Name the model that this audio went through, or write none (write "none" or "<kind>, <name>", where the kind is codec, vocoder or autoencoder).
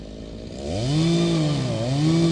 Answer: none